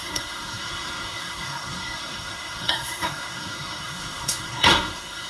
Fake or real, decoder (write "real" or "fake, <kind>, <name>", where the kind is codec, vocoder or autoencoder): fake, codec, SNAC